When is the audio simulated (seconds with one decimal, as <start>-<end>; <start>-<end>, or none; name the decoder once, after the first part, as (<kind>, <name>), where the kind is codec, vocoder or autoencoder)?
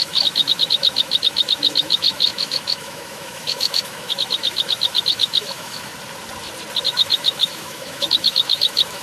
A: 0.0-5.9 (autoencoder, DAC-VAE); 6.8-9.0